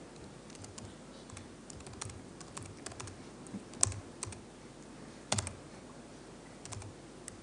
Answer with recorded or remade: recorded